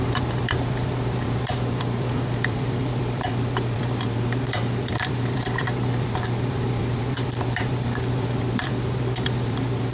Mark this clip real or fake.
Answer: fake